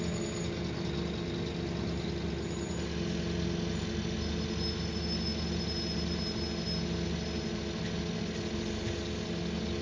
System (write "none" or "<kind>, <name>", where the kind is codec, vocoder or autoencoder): none